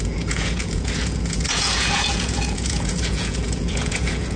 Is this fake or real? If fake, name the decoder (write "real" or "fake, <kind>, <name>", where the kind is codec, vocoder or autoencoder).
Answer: fake, vocoder, Vocos